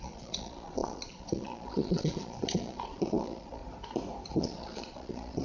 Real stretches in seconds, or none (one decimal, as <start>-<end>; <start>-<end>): 3.6-4.3